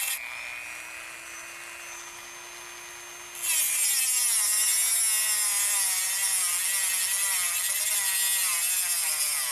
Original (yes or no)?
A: yes